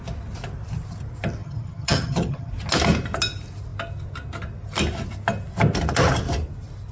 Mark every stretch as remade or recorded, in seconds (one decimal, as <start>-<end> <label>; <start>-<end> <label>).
0.0-1.4 recorded; 1.4-2.5 remade; 2.5-6.9 recorded